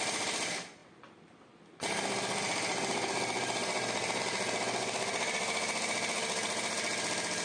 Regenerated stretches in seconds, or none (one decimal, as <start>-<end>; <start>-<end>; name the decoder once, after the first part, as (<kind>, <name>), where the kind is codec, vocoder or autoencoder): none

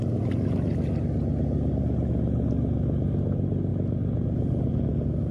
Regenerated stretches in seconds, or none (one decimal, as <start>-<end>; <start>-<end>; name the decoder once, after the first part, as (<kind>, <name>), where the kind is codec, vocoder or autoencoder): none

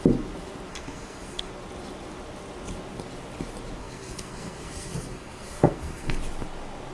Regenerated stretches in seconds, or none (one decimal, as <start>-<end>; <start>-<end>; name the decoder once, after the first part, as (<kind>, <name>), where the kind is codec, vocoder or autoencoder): 0.7-1.5 (codec, SNAC); 3.8-6.2

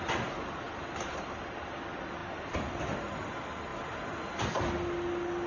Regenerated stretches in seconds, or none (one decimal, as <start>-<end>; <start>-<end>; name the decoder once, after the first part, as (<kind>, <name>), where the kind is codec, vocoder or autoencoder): none